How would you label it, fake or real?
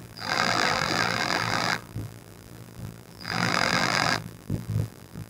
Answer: fake